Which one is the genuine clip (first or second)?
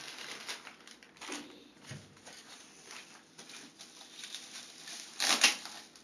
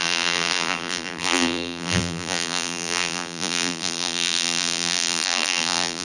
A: first